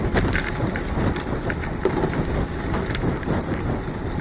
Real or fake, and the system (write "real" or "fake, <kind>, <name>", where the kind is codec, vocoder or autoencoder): real